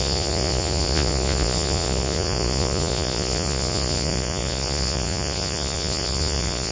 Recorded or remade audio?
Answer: remade